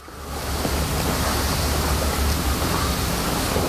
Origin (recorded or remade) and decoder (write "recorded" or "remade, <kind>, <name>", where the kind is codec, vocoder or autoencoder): recorded